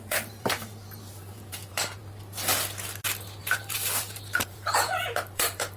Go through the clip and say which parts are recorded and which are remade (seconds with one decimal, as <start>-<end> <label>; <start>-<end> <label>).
0.0-2.0 remade; 2.0-3.4 recorded; 3.4-5.8 remade